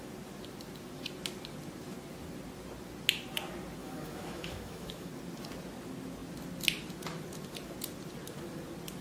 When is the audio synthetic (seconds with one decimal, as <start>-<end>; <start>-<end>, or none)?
3.8-5.1